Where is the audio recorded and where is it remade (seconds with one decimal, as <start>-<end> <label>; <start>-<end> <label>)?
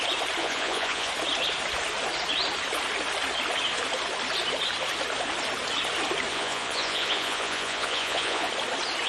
0.0-0.4 recorded; 0.4-1.1 remade; 1.1-6.3 recorded; 6.3-8.5 remade; 8.5-9.1 recorded